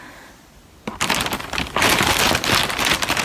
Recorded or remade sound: recorded